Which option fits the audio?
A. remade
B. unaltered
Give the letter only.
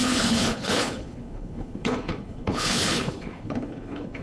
A